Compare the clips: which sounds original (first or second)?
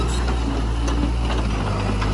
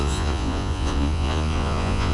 first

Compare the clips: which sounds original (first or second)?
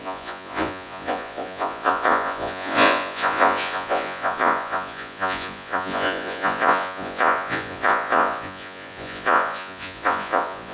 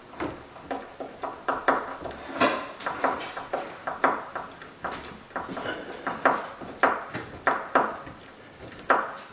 second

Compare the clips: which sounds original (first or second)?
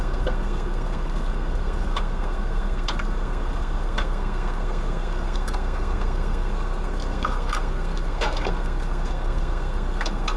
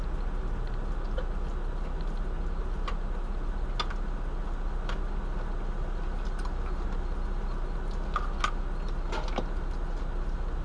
second